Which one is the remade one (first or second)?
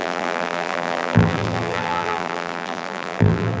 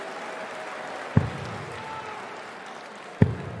first